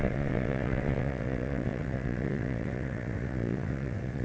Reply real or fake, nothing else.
fake